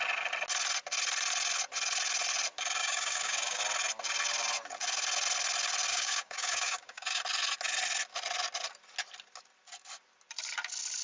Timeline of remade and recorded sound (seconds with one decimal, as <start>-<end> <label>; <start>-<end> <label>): 0.0-2.8 recorded; 2.8-3.6 remade; 3.6-5.9 recorded; 5.9-7.2 remade; 7.2-11.0 recorded